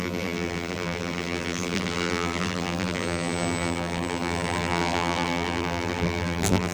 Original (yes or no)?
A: no